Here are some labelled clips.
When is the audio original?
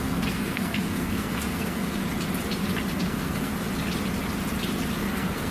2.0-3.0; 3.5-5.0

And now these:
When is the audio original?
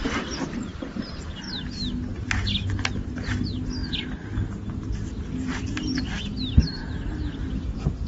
0.0-0.7; 1.2-8.1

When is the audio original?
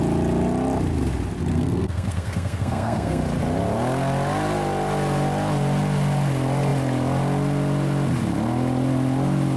0.0-1.5; 3.2-9.6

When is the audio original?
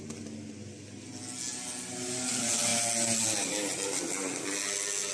0.0-5.1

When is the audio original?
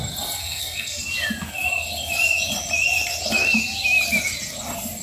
0.0-0.4; 1.0-5.0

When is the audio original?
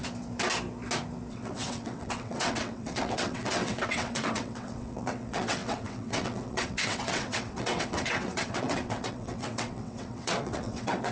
0.0-1.3